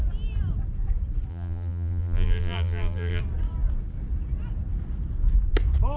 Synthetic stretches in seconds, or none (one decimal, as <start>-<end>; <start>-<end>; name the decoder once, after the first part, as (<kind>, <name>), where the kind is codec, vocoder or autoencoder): 1.3-3.2 (vocoder, BigVGAN v2)